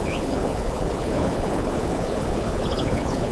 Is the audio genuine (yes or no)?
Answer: no